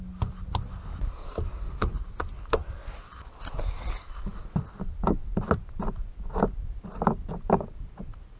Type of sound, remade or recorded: recorded